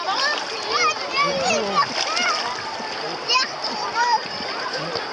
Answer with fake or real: real